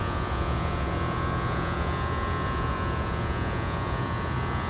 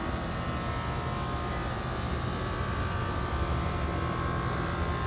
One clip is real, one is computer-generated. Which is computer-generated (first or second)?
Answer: first